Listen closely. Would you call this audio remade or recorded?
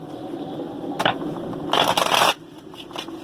recorded